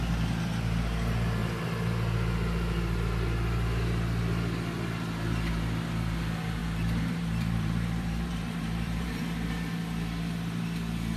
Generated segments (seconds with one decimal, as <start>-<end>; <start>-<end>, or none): 6.6-9.2